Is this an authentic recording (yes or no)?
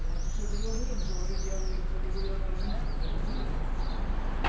yes